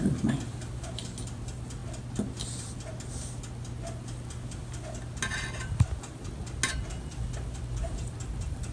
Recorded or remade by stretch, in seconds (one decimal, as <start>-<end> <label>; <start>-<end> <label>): 0.0-8.7 recorded